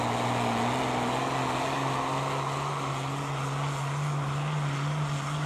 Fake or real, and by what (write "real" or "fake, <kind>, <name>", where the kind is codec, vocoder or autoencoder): real